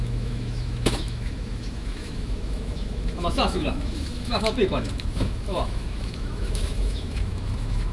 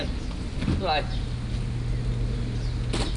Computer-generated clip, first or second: first